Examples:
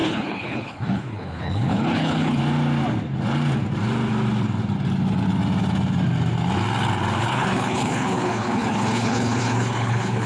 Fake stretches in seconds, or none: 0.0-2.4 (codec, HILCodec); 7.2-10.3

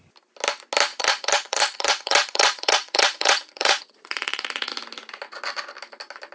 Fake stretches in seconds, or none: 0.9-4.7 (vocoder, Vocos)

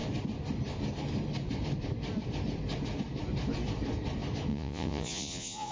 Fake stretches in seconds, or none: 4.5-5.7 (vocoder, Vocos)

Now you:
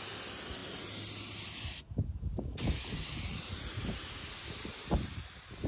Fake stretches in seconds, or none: none